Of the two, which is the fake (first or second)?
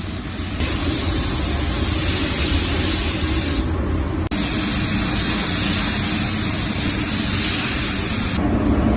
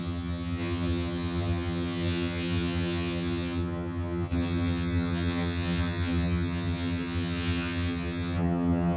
second